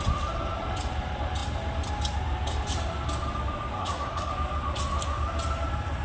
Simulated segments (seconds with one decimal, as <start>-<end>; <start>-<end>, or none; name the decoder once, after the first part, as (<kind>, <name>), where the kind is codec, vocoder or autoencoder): 3.8-4.3 (codec, SNAC)